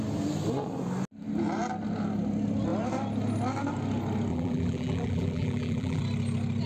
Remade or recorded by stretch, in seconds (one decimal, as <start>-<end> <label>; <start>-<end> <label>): 0.0-4.3 recorded; 4.3-6.0 remade; 6.0-6.7 recorded